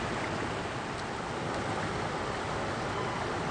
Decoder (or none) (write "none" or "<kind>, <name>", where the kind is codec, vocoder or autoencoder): none